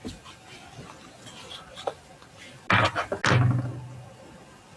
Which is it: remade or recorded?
recorded